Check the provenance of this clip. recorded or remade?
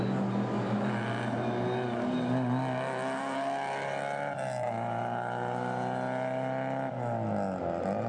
recorded